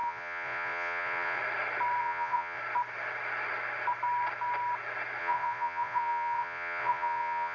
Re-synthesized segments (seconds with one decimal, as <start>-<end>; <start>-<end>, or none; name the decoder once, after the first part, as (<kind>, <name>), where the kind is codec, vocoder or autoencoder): 0.0-1.4 (vocoder, Vocos); 2.0-2.6; 5.2-7.5